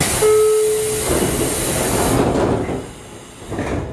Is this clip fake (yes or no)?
no